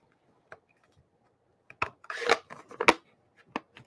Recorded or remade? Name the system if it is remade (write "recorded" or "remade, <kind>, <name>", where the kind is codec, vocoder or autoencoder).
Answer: recorded